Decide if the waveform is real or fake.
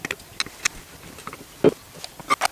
real